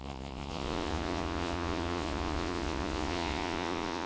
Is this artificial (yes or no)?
yes